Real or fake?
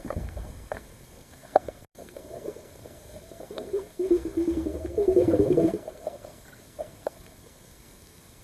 fake